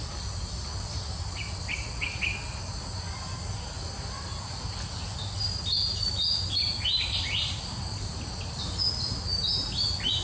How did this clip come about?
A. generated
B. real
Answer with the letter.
B